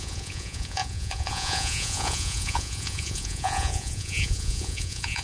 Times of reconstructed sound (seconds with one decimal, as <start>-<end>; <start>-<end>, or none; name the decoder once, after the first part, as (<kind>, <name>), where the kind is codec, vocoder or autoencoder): 0.0-5.2 (vocoder, Vocos)